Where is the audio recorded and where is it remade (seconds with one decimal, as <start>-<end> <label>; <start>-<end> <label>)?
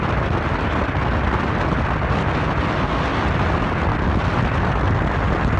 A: 0.0-5.6 recorded